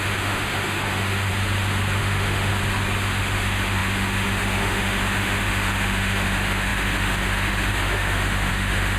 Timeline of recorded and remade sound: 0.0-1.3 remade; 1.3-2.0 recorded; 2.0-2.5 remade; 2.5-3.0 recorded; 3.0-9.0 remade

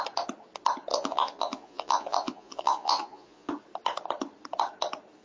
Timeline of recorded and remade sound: 0.0-0.9 recorded; 0.9-3.5 remade; 3.5-5.2 recorded

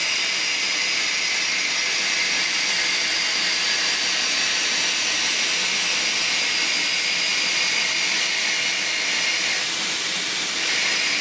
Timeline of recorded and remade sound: 0.0-11.2 recorded

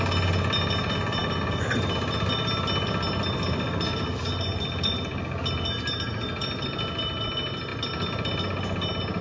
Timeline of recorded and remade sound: 0.0-9.2 recorded

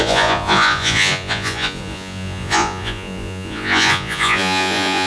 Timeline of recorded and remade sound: 0.0-5.1 remade

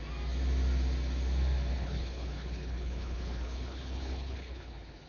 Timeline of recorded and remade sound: 0.0-1.7 recorded; 1.7-5.1 remade

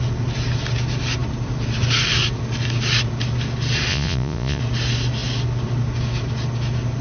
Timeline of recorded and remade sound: 0.0-3.9 recorded; 3.9-4.6 remade; 4.6-7.0 recorded

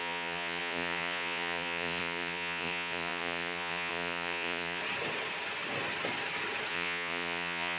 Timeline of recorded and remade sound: 0.0-4.8 remade; 4.8-6.7 recorded; 6.7-7.8 remade